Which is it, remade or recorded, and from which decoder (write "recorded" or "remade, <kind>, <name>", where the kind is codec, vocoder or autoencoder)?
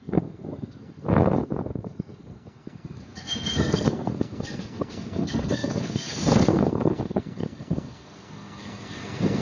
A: remade, codec, SNAC